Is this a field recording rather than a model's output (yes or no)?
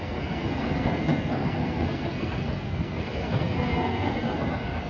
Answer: no